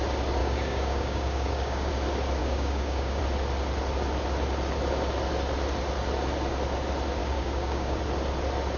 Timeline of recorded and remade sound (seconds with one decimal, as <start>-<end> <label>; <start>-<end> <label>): 0.0-0.4 recorded; 0.4-1.9 remade; 1.9-2.4 recorded; 2.4-3.2 remade; 3.2-7.2 recorded; 7.2-8.0 remade; 8.0-8.8 recorded

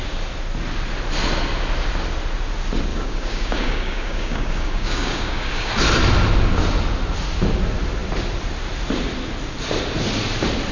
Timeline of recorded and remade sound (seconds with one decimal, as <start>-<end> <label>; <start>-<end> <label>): 0.0-2.9 recorded; 2.9-5.7 remade; 5.7-10.7 recorded

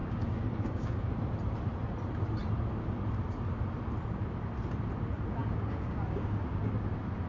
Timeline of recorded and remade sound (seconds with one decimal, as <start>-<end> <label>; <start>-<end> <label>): 0.0-1.1 remade; 1.1-5.4 recorded; 5.4-6.6 remade; 6.6-7.3 recorded

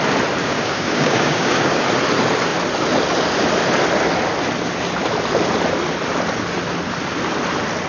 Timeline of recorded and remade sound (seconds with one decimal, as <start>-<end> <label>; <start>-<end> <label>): 0.0-0.4 recorded; 0.4-1.9 remade; 1.9-7.9 recorded

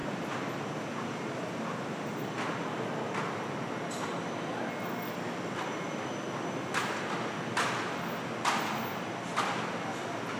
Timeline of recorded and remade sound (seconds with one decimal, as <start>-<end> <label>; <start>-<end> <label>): 0.0-10.4 recorded

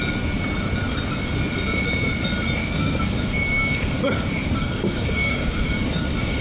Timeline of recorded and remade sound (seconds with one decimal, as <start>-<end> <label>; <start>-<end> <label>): 0.0-2.6 recorded; 2.6-6.4 remade

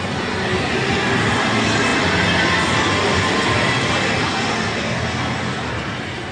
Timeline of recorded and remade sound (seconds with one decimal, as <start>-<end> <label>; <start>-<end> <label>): 0.0-6.3 recorded